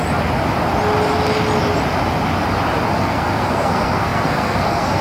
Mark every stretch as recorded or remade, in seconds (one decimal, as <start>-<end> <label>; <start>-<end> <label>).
0.0-3.0 recorded; 3.0-5.0 remade